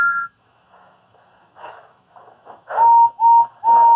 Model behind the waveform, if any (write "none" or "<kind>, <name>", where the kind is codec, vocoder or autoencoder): autoencoder, DAC-VAE